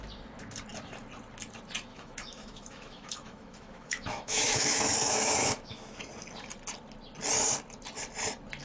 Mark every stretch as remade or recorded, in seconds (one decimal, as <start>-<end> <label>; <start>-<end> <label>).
0.0-1.9 recorded; 1.9-6.1 remade; 6.1-8.6 recorded